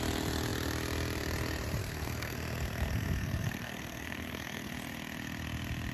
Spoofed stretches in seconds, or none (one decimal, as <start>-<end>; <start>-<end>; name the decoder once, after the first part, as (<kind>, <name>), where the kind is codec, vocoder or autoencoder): 1.8-4.7 (codec, SNAC)